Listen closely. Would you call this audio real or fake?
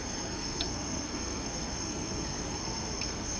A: fake